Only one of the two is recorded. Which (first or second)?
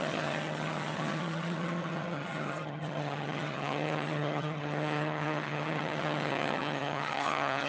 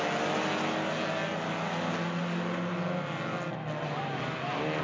second